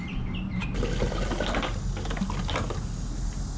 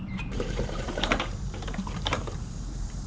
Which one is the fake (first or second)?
second